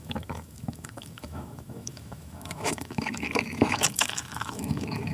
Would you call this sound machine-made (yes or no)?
yes